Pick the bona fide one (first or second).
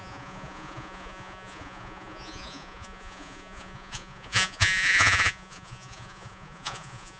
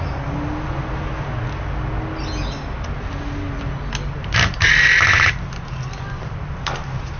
second